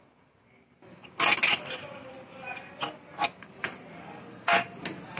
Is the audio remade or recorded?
recorded